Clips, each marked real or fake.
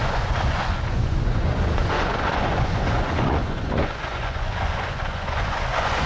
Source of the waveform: fake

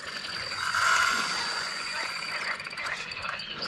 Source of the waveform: fake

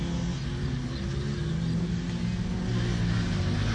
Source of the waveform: real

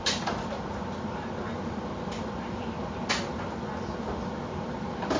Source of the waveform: real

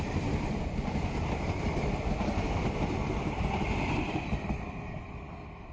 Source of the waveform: real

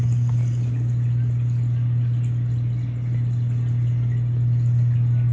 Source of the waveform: real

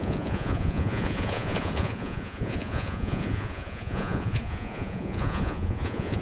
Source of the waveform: fake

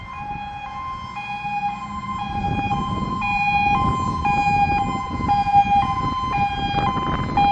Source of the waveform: real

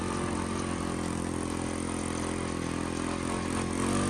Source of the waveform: real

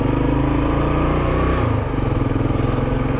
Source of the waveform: real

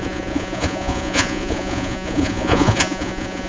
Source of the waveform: fake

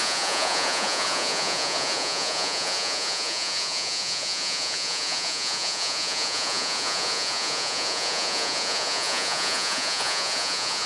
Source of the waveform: fake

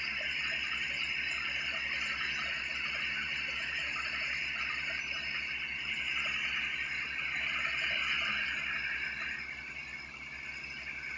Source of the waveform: real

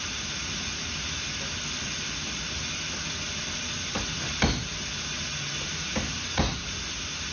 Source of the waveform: real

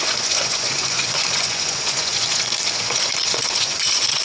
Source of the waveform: fake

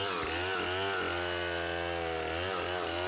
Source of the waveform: real